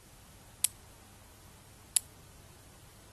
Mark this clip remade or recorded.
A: recorded